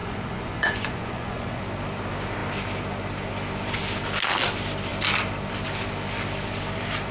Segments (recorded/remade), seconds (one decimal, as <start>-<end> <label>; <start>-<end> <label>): 0.0-1.6 remade; 1.6-7.1 recorded